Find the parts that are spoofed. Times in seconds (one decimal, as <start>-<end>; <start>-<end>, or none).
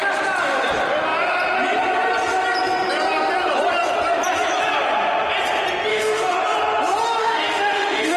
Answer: 5.9-6.4; 7.2-8.2